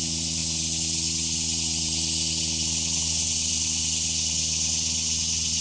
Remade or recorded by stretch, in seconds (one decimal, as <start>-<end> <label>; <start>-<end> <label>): 0.0-5.6 recorded